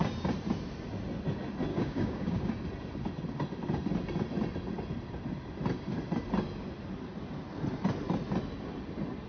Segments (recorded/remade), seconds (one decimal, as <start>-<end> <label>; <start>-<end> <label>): 0.0-1.7 recorded; 1.7-2.5 remade; 2.5-9.3 recorded